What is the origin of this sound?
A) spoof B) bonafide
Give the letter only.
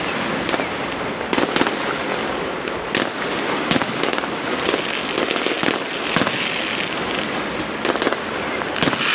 B